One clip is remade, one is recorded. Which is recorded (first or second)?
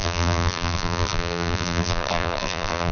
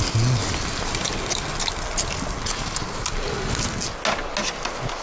second